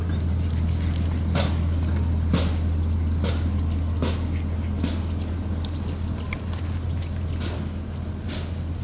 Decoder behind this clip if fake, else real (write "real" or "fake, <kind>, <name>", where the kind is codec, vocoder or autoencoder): real